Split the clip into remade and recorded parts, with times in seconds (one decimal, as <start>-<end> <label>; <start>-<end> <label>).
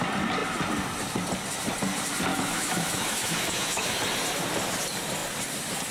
0.0-2.3 recorded; 2.3-4.0 remade; 4.0-5.9 recorded